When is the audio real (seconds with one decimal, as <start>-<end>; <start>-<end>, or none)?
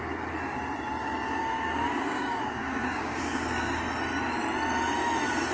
0.0-1.0; 3.8-5.5